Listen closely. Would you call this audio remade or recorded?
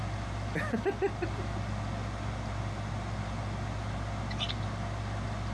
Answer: recorded